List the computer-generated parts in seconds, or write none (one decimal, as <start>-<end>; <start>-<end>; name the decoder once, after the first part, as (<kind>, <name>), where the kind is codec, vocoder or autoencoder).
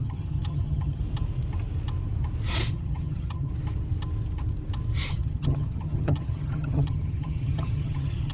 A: 0.0-1.0 (vocoder, HiFi-GAN); 2.7-3.5; 5.1-8.3